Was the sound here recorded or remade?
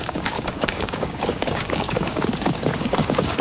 remade